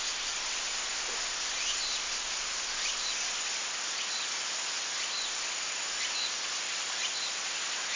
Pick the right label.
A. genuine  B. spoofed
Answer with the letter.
A